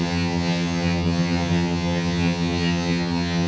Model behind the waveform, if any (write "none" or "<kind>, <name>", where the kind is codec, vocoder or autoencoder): vocoder, HiFi-GAN